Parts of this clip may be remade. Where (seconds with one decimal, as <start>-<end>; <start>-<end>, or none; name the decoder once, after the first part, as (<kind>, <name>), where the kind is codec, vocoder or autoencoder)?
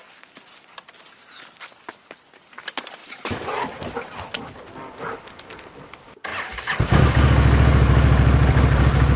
none